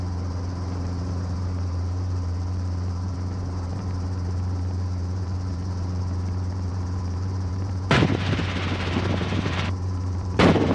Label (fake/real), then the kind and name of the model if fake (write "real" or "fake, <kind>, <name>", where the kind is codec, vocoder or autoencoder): fake, vocoder, BigVGAN v2